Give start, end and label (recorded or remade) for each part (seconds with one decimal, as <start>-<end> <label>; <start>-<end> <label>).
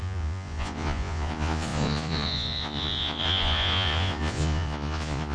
0.0-5.3 remade